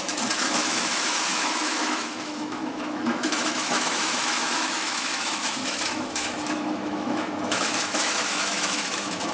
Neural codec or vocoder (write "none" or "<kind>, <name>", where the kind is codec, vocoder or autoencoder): autoencoder, DAC-VAE